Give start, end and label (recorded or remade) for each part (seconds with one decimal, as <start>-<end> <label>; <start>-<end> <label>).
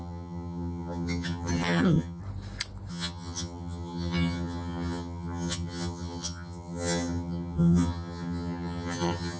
0.0-2.2 remade; 2.2-2.9 recorded; 2.9-9.4 remade